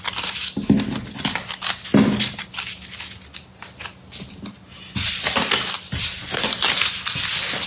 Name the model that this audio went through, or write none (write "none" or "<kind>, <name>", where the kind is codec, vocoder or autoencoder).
none